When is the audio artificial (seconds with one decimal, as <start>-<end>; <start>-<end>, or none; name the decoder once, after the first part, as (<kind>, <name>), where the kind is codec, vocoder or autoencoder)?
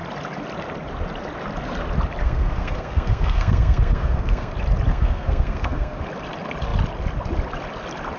2.2-4.5 (codec, SNAC); 4.9-6.0